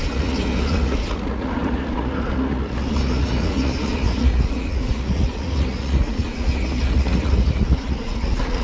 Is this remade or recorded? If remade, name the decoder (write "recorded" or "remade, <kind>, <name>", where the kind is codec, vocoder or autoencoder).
remade, vocoder, Vocos